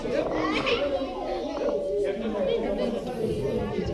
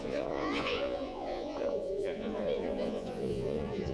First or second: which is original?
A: first